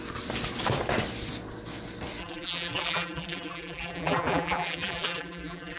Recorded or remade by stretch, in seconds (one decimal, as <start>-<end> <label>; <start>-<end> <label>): 0.0-2.2 recorded; 2.2-5.8 remade